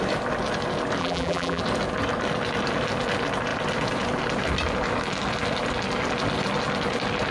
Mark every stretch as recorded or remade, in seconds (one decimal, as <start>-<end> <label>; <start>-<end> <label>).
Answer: 0.0-1.0 recorded; 1.0-1.6 remade; 1.6-7.3 recorded